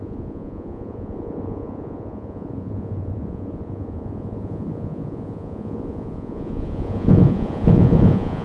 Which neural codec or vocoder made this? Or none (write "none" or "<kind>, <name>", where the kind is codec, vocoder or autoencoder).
vocoder, Vocos